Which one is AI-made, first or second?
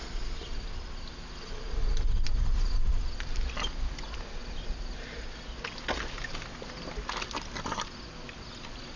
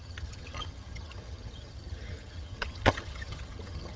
second